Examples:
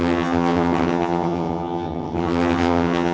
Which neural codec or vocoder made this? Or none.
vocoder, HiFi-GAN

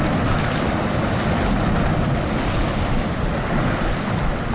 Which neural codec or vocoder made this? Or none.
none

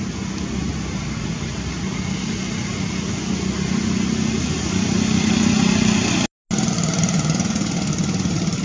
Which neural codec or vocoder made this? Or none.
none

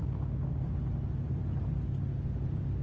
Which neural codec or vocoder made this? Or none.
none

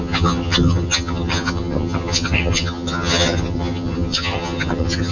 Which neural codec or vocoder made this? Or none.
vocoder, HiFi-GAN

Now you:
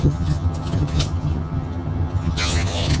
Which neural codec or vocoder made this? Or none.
vocoder, HiFi-GAN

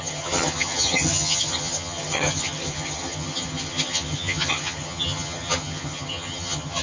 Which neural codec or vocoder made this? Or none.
vocoder, HiFi-GAN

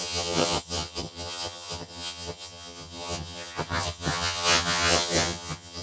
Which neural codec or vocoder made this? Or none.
vocoder, HiFi-GAN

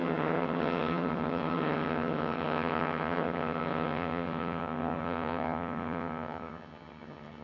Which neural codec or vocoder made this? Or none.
vocoder, HiFi-GAN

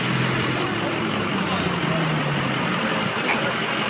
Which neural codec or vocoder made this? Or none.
none